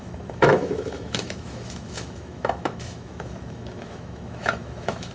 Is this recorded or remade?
remade